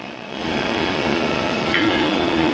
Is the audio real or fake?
fake